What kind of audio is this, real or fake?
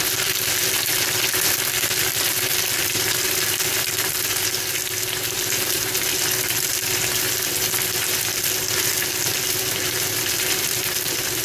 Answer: fake